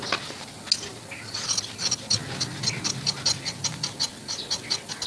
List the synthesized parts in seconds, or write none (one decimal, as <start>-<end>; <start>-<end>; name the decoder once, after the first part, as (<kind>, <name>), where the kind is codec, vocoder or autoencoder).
none